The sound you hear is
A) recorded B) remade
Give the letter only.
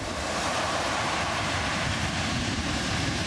B